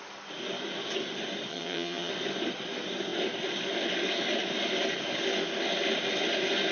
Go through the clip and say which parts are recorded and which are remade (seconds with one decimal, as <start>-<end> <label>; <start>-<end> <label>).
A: 0.0-1.5 recorded; 1.5-2.1 remade; 2.1-6.7 recorded